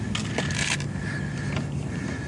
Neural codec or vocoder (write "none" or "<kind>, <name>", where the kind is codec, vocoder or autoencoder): none